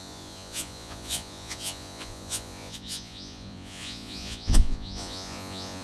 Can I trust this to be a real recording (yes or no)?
no